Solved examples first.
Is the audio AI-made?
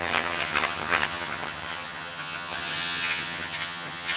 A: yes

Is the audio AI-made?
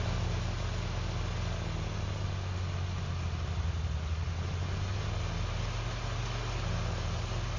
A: no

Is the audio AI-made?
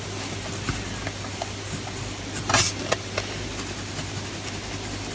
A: no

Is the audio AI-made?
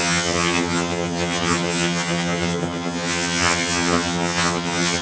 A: yes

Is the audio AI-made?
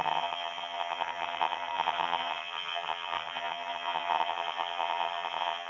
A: yes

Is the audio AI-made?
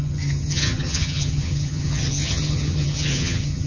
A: yes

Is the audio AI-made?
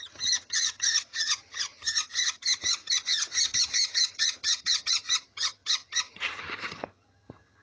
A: yes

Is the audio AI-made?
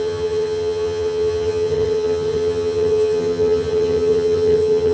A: yes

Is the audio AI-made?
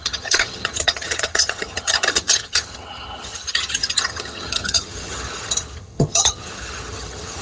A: yes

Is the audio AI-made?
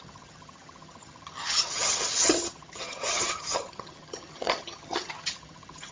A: yes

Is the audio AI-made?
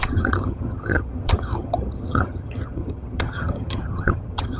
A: yes